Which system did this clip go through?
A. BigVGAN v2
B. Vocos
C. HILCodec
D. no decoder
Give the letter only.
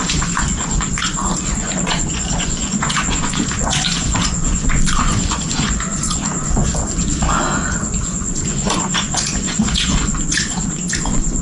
B